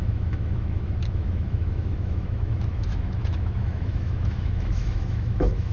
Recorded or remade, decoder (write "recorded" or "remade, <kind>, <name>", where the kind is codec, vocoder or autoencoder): remade, autoencoder, DAC-VAE